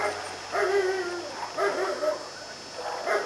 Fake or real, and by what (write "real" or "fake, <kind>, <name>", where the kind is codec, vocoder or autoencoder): real